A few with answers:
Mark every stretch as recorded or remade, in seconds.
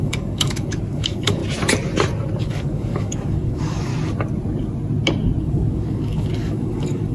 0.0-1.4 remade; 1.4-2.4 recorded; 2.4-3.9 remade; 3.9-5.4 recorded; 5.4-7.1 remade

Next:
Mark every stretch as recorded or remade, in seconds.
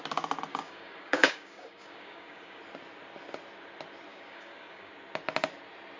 0.0-0.5 recorded; 0.5-2.6 remade; 2.6-4.1 recorded; 4.1-4.9 remade; 4.9-6.0 recorded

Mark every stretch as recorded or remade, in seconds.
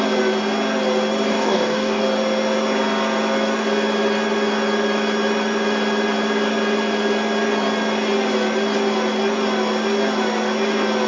0.0-1.3 recorded; 1.3-2.0 remade; 2.0-11.1 recorded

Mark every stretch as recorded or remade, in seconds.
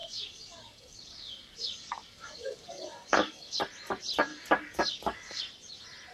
0.0-3.6 remade; 3.6-4.3 recorded; 4.3-5.4 remade; 5.4-6.1 recorded